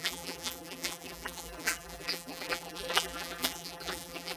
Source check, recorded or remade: remade